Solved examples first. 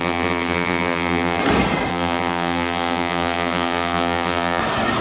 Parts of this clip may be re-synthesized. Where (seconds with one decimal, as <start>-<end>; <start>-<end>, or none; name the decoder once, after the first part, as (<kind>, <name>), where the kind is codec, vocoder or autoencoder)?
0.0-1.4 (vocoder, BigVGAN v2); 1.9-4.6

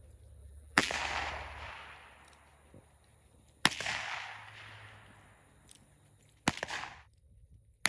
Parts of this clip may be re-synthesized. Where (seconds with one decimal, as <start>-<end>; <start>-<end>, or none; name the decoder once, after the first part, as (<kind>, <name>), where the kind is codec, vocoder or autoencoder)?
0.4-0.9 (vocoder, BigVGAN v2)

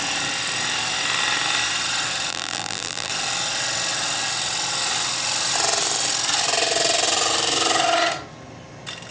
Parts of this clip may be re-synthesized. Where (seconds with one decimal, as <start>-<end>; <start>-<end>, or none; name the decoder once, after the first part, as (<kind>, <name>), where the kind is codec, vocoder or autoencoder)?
2.3-3.1 (vocoder, BigVGAN v2)